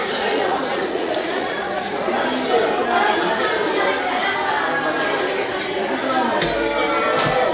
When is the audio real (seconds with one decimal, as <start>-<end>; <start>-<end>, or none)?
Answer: 2.1-7.5